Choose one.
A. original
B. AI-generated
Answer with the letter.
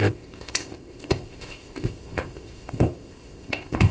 B